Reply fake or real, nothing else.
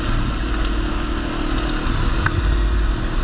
real